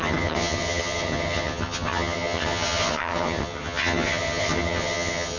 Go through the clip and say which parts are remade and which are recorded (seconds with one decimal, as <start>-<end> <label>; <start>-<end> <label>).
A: 0.0-5.4 remade

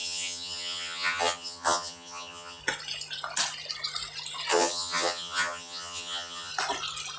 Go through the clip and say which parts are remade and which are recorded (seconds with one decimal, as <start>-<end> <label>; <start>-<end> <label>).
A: 0.0-2.6 remade; 2.6-4.5 recorded; 4.5-6.5 remade; 6.5-7.2 recorded

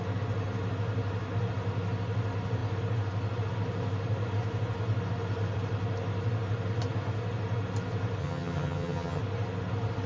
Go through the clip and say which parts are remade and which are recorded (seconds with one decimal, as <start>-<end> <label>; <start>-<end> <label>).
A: 0.0-8.2 recorded; 8.2-9.2 remade; 9.2-10.1 recorded